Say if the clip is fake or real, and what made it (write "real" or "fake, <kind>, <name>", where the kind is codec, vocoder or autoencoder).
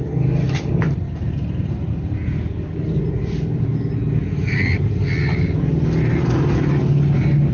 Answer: real